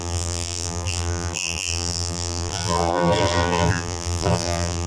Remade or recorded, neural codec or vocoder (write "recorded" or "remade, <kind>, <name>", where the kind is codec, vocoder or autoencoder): remade, vocoder, BigVGAN v2